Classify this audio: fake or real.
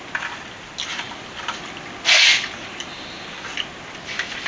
real